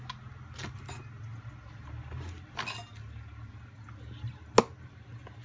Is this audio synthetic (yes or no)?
no